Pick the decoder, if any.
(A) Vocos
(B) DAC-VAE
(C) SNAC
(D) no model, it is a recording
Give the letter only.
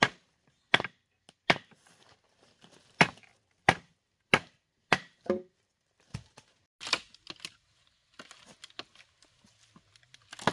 D